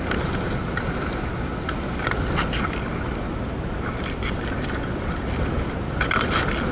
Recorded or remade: recorded